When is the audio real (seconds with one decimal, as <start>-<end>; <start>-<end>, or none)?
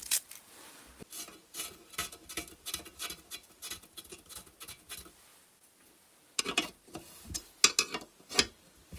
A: 0.0-9.0